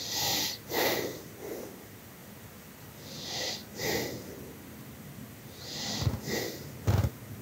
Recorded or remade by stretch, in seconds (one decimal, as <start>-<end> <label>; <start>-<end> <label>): 0.0-7.4 recorded